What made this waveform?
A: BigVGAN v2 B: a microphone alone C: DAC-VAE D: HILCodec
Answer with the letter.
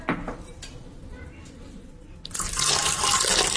B